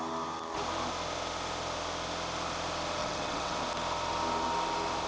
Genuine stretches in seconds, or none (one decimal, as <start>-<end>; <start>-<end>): 0.0-3.0; 3.6-5.1